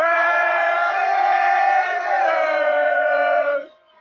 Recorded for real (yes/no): no